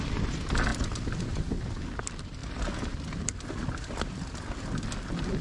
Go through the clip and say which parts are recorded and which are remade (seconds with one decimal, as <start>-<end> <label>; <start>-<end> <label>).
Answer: 0.0-5.4 recorded